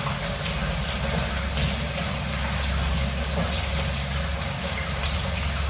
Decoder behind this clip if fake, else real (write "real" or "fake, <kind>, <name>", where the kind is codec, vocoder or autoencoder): real